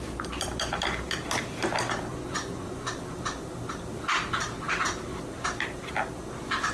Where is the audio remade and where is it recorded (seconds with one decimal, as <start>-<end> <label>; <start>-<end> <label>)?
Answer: 0.0-2.1 recorded; 2.1-2.9 remade; 2.9-6.7 recorded